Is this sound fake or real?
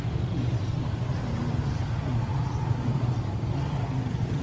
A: real